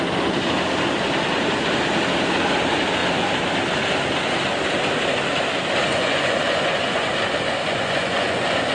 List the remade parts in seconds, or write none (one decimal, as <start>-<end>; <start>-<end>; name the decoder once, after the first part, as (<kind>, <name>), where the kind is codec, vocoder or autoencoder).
5.9-7.1 (vocoder, Vocos); 7.6-8.7